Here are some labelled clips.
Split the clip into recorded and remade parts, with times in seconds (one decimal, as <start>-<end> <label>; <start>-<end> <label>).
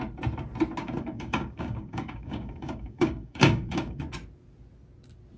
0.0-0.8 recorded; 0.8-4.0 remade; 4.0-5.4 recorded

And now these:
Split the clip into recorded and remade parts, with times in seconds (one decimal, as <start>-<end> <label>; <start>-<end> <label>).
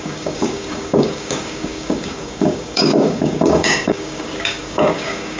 0.0-5.4 remade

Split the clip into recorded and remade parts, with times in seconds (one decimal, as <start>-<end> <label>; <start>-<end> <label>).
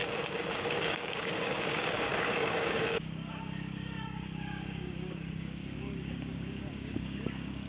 0.0-0.5 recorded; 0.5-7.7 remade